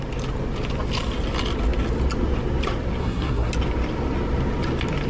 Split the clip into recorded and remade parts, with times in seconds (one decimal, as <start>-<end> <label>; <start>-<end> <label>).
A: 0.0-3.0 recorded; 3.0-3.5 remade; 3.5-5.1 recorded